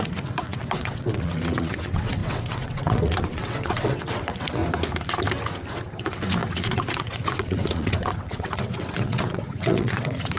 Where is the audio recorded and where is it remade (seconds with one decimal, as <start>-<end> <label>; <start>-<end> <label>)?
0.0-4.6 remade; 4.6-5.8 recorded; 5.8-10.4 remade